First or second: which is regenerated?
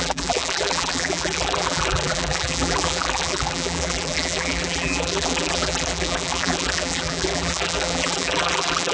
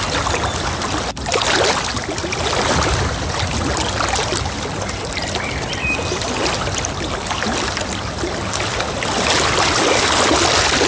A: first